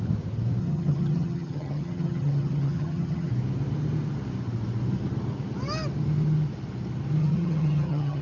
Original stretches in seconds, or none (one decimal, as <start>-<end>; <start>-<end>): 0.0-0.6; 3.3-7.2